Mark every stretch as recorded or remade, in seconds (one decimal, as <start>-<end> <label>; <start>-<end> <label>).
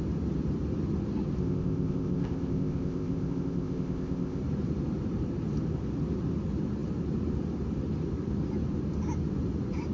0.0-1.4 recorded; 1.4-4.4 remade; 4.4-9.9 recorded